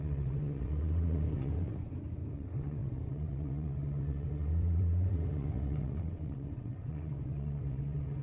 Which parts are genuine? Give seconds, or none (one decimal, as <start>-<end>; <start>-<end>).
1.8-2.3